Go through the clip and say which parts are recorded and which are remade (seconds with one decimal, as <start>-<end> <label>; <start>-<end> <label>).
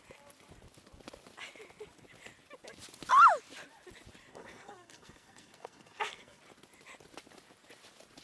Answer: 0.0-4.3 recorded; 4.3-6.4 remade; 6.4-8.2 recorded